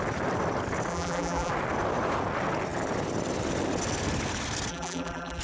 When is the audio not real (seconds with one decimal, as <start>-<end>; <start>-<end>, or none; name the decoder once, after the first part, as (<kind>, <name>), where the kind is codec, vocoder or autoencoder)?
0.9-1.5 (vocoder, BigVGAN v2); 4.7-5.4